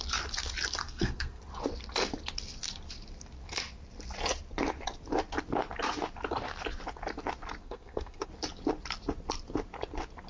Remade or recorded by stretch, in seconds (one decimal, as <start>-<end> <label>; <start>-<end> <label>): 0.0-0.8 recorded; 0.8-1.4 remade; 1.4-7.6 recorded; 7.6-8.3 remade; 8.3-10.3 recorded